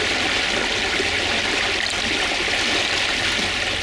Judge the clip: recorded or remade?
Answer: recorded